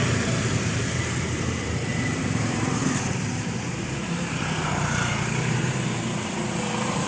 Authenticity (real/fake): fake